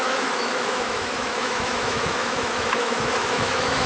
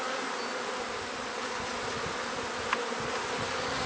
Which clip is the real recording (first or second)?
second